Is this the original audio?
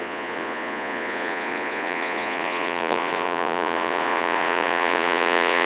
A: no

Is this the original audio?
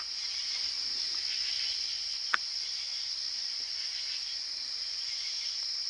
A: yes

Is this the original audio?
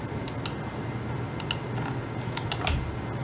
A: yes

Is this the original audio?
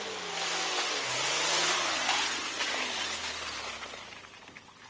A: yes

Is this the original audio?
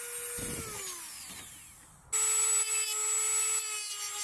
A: yes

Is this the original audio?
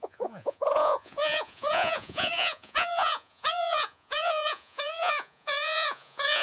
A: no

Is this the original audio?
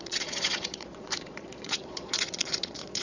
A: no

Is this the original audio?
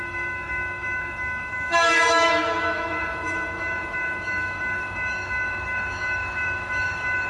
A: no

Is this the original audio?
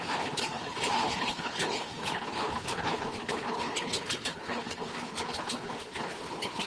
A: no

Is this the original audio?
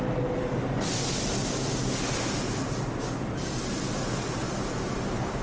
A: yes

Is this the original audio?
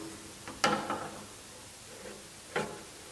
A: yes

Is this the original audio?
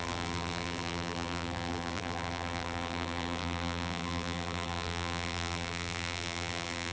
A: no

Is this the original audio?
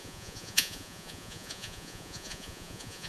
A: no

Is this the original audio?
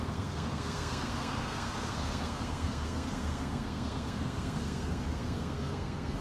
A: no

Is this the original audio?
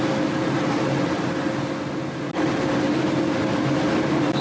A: yes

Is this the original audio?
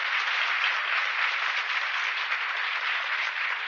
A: yes